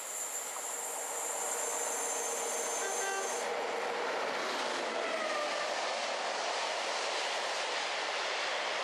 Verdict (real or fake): real